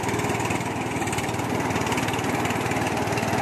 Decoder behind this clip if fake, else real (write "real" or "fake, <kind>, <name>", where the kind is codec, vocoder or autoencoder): real